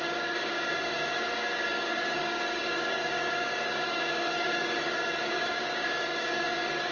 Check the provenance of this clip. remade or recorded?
remade